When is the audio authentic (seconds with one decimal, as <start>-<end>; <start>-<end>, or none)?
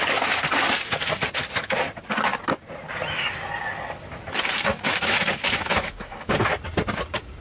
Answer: 0.0-4.7; 6.5-7.4